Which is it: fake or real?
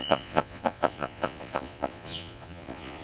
fake